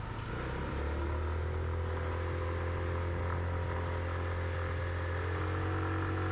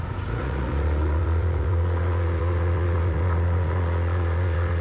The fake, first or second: second